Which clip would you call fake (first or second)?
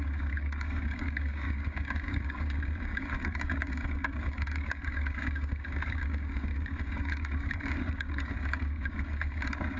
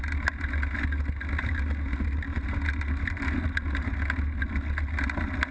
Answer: first